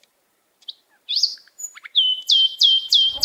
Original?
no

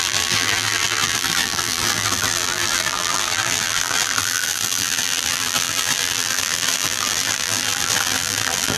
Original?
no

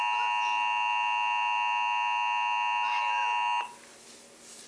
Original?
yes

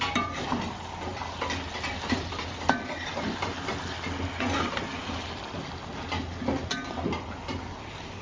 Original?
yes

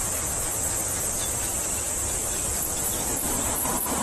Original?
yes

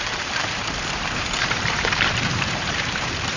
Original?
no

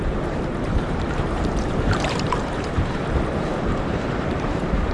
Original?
no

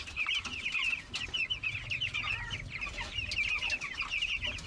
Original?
yes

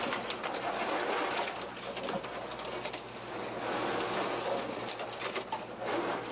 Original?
yes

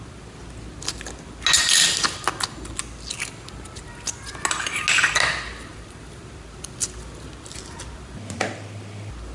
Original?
yes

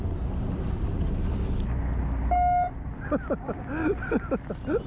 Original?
yes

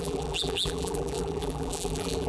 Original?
no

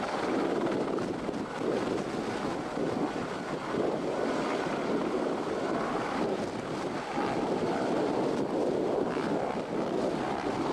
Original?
yes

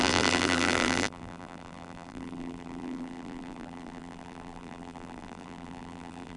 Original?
no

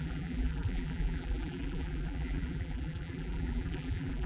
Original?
no